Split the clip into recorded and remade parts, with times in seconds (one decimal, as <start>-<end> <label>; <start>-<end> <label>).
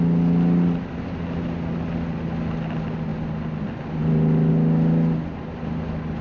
0.0-6.2 recorded